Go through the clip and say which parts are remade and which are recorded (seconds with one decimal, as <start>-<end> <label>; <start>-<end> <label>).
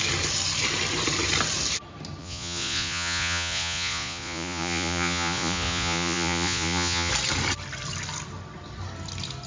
0.0-2.2 recorded; 2.2-7.1 remade; 7.1-9.5 recorded